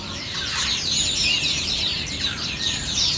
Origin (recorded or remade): remade